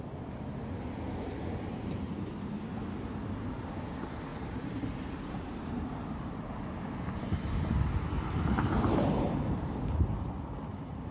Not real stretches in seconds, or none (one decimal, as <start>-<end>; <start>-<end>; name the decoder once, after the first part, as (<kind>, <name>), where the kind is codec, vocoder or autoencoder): 0.0-0.6 (vocoder, BigVGAN v2); 1.7-11.1

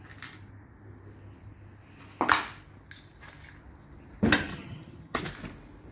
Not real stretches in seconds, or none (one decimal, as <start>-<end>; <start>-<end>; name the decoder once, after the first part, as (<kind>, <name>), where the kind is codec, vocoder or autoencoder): 4.5-5.2 (vocoder, HiFi-GAN)

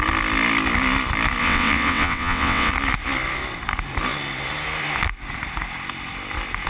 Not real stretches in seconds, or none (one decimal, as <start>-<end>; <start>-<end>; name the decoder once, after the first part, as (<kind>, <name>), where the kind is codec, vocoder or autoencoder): 1.4-2.7 (vocoder, WaveNeXt)

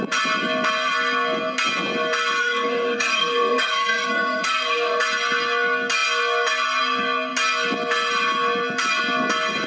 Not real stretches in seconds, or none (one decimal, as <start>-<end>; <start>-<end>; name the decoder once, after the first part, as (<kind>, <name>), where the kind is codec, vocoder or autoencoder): 2.4-5.0 (codec, SNAC)